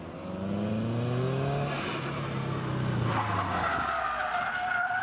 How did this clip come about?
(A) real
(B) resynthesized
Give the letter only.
A